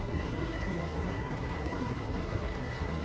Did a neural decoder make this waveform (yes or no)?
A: yes